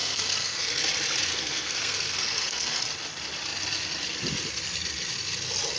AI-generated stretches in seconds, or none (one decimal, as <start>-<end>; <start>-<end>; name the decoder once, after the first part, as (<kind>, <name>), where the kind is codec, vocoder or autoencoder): 0.0-0.7 (codec, SNAC); 1.3-2.8